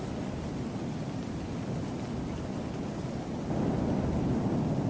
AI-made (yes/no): no